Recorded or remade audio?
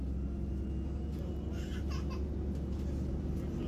recorded